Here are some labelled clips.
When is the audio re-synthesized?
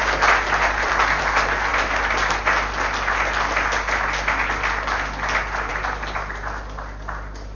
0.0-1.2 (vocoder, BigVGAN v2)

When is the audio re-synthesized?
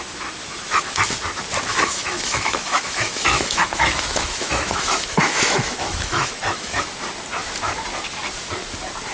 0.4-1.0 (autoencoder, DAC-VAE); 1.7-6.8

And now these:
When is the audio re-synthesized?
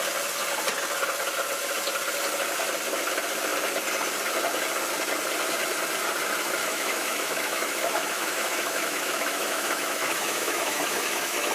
6.6-11.5 (autoencoder, DAC-VAE)